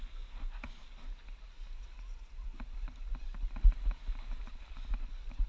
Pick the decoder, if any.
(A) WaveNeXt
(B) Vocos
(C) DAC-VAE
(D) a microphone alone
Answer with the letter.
D